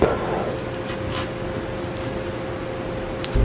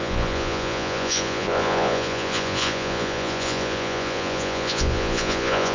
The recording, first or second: first